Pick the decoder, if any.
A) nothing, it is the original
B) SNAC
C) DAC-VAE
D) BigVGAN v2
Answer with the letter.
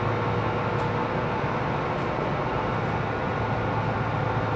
A